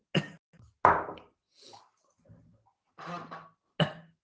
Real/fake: real